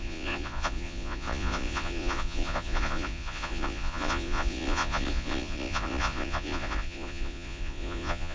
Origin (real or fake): fake